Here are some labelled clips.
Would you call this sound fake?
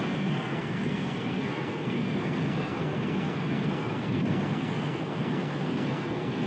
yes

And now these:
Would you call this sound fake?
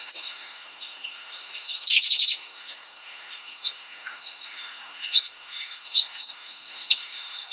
yes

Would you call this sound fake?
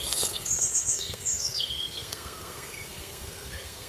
yes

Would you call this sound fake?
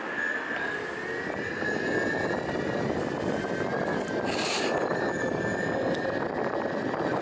no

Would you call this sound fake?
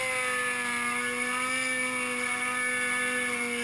no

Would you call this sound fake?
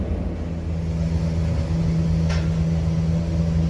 no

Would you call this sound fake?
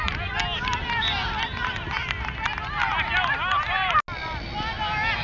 no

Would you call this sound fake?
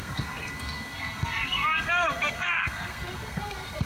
yes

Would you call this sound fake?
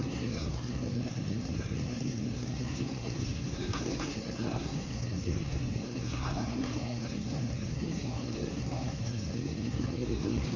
yes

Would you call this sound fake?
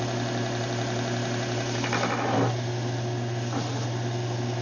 no